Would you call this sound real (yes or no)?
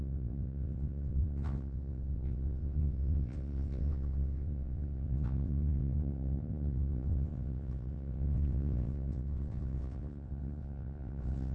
no